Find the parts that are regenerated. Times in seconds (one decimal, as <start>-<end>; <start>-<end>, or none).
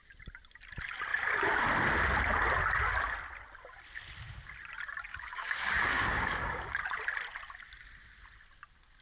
5.1-6.8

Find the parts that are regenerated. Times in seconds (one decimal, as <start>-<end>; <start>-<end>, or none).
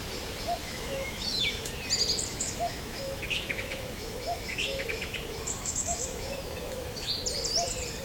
0.6-1.7; 2.3-7.1